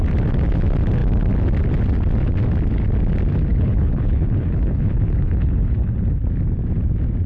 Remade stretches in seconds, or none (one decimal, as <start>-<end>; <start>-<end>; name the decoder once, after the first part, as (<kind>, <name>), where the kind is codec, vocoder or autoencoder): 3.5-6.2 (codec, HILCodec)

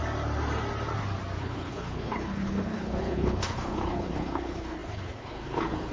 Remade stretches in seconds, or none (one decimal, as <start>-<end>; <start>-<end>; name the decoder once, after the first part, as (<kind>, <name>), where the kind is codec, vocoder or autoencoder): 1.4-5.9 (codec, HILCodec)

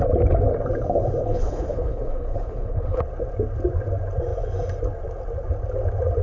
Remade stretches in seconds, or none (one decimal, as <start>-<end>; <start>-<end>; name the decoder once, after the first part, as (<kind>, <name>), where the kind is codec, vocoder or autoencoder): 1.2-3.0 (codec, HILCodec)

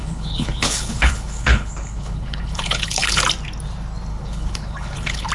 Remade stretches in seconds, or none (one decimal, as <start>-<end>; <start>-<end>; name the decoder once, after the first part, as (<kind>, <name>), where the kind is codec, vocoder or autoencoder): 0.0-3.2 (codec, HILCodec); 4.1-5.3

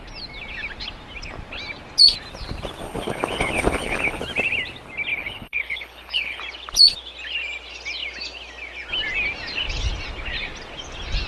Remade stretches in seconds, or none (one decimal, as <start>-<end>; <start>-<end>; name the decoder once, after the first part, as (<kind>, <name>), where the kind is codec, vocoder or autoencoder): 2.8-4.2 (codec, HILCodec); 5.1-6.4

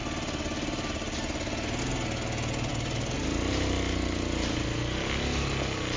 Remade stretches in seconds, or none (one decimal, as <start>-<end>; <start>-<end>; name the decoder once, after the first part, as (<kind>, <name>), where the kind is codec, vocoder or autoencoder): none